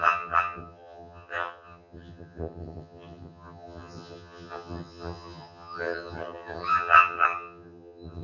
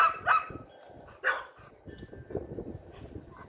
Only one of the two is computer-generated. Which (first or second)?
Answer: first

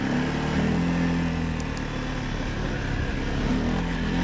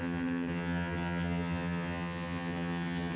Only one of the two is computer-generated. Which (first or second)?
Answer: second